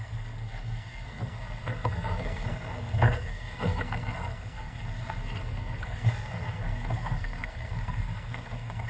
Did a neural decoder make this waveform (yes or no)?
yes